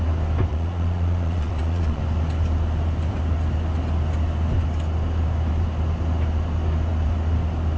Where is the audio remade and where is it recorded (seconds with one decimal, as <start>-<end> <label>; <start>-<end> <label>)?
0.0-0.5 recorded; 0.5-2.0 remade; 2.0-7.8 recorded